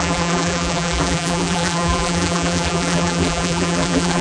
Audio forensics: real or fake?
fake